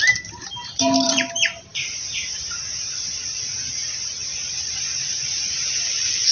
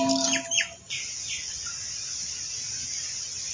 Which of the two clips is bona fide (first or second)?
second